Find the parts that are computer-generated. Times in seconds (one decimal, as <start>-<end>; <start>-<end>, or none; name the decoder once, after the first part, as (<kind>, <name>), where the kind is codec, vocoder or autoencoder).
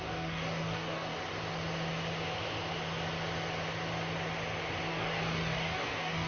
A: 0.0-1.1 (codec, DAC); 4.9-6.3